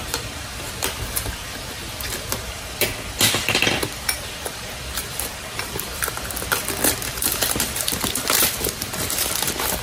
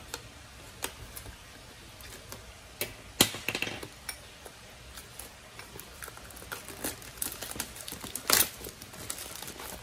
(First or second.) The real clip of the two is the second